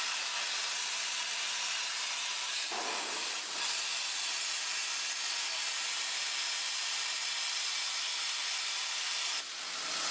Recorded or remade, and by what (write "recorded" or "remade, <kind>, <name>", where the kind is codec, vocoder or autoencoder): recorded